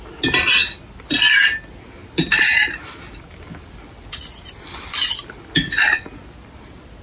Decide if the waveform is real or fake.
real